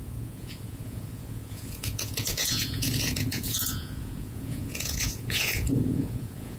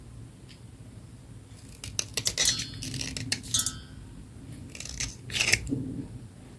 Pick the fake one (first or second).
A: first